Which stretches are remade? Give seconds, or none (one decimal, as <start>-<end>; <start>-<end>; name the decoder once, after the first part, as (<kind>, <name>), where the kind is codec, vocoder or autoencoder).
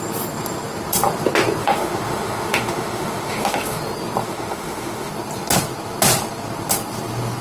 1.6-3.8 (autoencoder, DAC-VAE); 4.2-5.1